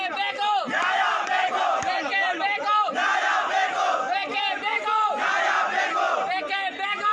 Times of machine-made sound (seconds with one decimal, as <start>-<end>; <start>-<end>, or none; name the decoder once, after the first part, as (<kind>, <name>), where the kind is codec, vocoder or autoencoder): none